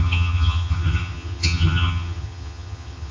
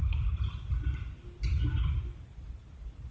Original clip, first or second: second